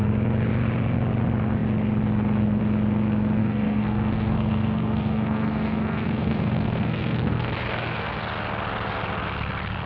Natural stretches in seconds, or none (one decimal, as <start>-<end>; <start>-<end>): 0.0-3.4; 8.2-9.9